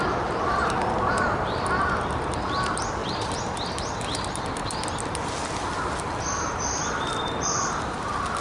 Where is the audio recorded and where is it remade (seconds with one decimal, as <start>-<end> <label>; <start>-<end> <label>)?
0.0-8.4 recorded